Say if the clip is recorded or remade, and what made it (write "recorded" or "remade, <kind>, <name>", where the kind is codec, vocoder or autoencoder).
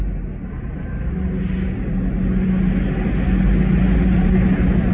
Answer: recorded